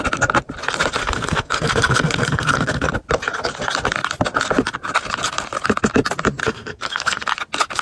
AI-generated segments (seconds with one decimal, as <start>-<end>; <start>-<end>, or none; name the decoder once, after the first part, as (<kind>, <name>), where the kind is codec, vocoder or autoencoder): 1.0-2.9 (codec, SNAC); 6.4-7.3